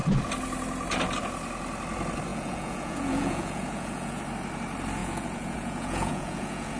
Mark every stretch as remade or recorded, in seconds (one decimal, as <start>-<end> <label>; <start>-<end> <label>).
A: 0.0-2.3 recorded; 2.3-4.2 remade; 4.2-5.0 recorded; 5.0-6.8 remade